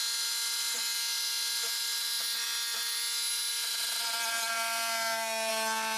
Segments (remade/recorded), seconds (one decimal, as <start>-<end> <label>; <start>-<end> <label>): 0.0-6.0 recorded